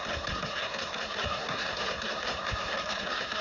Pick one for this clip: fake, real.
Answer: fake